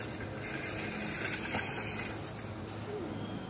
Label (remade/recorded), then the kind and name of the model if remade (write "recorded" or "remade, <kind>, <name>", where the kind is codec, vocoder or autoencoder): recorded